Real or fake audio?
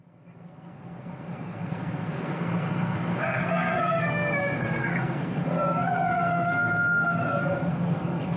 fake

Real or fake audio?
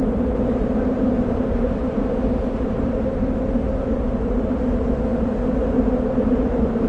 fake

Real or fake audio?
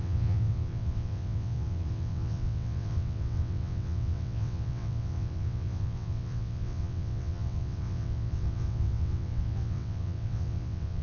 fake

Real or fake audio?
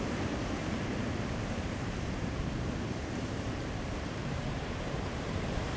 fake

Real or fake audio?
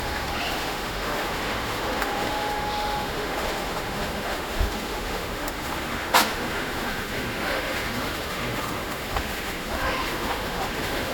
fake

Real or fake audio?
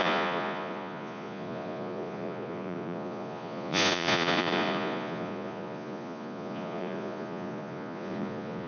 fake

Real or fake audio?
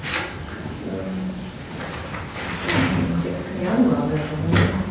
real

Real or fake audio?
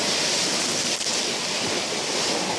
real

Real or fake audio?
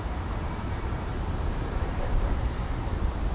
fake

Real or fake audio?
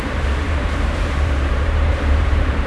fake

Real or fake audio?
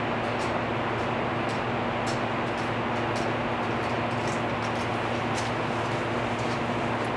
real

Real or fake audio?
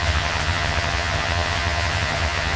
fake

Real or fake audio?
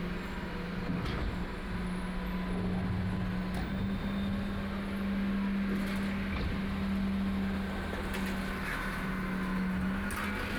real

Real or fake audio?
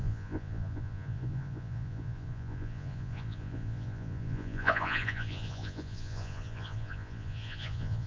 fake